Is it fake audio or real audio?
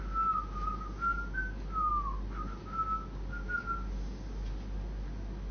real